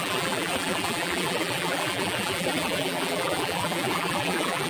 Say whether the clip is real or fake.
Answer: fake